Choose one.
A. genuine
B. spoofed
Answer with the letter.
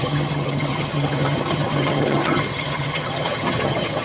B